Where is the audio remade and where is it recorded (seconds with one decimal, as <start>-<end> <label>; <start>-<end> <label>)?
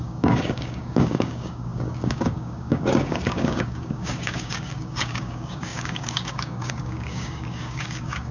0.0-8.3 remade